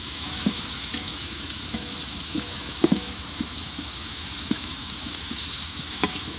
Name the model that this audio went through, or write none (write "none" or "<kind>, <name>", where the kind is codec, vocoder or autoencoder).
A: autoencoder, DAC-VAE